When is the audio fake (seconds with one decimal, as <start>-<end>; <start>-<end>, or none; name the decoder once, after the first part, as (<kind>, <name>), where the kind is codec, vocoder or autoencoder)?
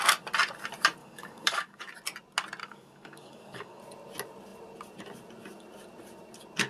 1.0-1.9 (codec, DAC); 2.6-3.8